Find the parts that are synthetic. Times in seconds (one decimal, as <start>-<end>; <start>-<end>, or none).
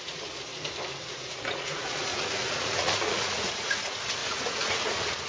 0.0-0.5; 1.1-5.3